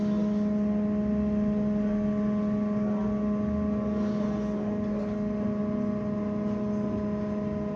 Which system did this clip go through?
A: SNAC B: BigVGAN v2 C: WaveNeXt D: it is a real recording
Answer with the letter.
D